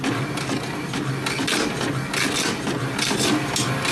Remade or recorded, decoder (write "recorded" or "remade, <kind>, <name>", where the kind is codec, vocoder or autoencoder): recorded